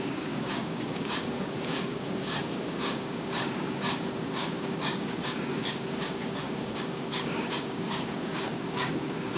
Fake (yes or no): yes